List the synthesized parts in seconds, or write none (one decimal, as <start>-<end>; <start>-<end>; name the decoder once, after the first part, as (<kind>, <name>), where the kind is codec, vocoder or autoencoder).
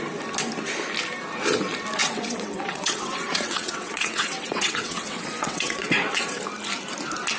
2.0-6.4 (vocoder, WaveNeXt)